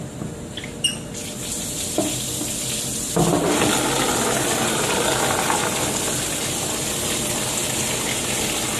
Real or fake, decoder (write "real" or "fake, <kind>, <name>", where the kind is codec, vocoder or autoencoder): real